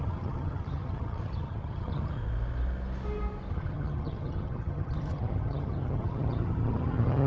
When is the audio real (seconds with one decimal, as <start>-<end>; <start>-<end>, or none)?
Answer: 2.2-3.5